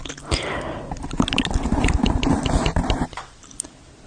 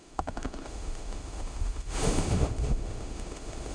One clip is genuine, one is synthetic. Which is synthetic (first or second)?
second